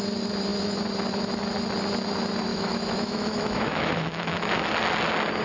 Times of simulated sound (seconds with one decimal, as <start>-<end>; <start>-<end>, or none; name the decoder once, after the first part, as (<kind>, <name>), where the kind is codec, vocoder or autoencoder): 2.5-4.7 (autoencoder, DAC-VAE)